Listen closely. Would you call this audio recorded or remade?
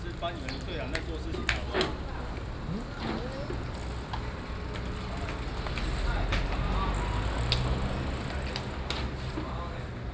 recorded